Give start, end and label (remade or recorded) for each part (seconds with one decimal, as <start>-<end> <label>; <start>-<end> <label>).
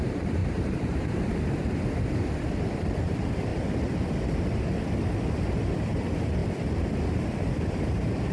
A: 0.0-3.5 remade; 3.5-5.1 recorded; 5.1-6.4 remade; 6.4-7.2 recorded; 7.2-8.3 remade